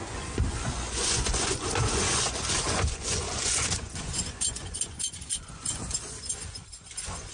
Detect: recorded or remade remade